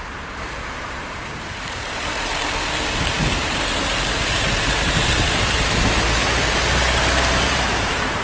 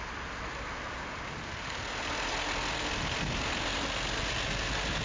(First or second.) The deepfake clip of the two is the first